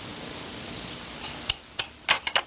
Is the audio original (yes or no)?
yes